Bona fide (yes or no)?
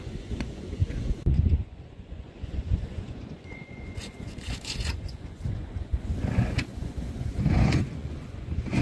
no